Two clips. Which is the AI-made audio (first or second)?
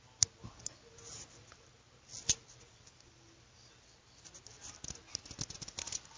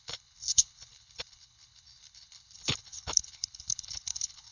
second